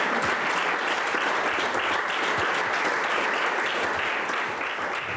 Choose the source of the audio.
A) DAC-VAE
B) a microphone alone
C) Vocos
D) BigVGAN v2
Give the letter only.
B